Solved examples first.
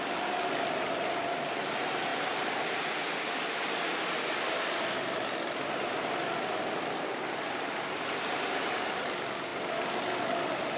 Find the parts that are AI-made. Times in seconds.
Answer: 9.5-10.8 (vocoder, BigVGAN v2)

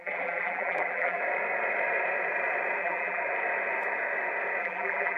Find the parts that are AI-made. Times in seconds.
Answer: 0.0-1.2 (vocoder, BigVGAN v2); 2.8-3.2; 4.6-5.2

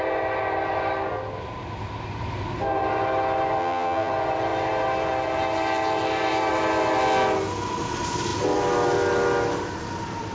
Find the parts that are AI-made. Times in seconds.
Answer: 3.6-4.1 (vocoder, BigVGAN v2)

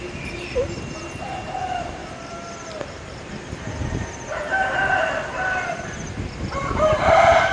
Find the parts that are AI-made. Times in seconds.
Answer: 0.0-7.5 (vocoder, BigVGAN v2)

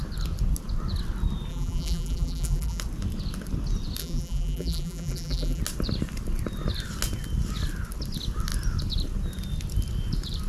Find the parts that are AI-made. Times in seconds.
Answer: 1.5-2.8 (vocoder, BigVGAN v2); 4.0-5.6

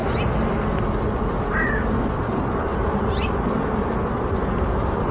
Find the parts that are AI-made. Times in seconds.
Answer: 2.0-5.1 (vocoder, BigVGAN v2)

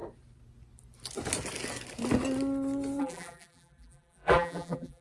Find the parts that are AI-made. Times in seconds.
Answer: 3.0-5.0 (vocoder, BigVGAN v2)